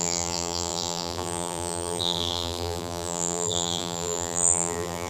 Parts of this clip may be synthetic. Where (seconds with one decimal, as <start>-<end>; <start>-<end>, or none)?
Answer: 0.0-5.1